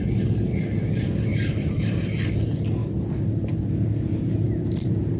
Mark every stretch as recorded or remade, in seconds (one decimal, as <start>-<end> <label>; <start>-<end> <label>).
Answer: 0.0-1.3 recorded; 1.3-2.3 remade; 2.3-2.8 recorded; 2.8-4.2 remade; 4.2-5.2 recorded